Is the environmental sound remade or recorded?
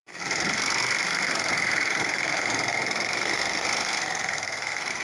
remade